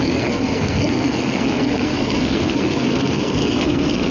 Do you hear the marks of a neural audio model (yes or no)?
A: yes